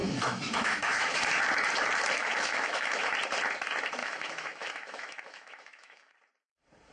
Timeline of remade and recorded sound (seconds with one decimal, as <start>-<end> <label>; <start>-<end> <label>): 0.0-1.2 remade; 1.2-2.2 recorded; 2.2-3.1 remade; 3.1-4.0 recorded; 4.0-6.1 remade; 6.1-6.9 recorded